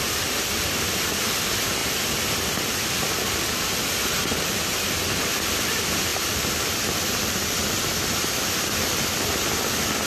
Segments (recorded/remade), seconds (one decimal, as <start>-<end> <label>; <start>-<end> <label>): 0.0-10.1 remade

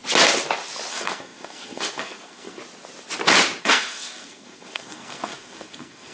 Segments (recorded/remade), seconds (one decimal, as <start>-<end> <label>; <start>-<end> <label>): 0.0-0.9 recorded; 0.9-2.6 remade; 2.6-3.6 recorded; 3.6-6.1 remade

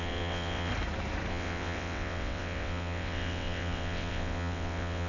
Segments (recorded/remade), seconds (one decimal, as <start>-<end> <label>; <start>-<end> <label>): 0.0-0.7 remade; 0.7-1.3 recorded; 1.3-5.1 remade

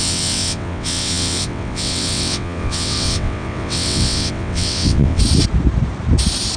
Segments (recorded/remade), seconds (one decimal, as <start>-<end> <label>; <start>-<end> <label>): 0.0-5.2 remade; 5.2-6.6 recorded

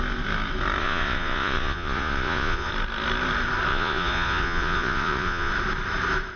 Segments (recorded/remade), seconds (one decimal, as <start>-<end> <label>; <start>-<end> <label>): 0.0-0.8 recorded; 0.8-2.7 remade; 2.7-3.7 recorded; 3.7-5.5 remade; 5.5-6.4 recorded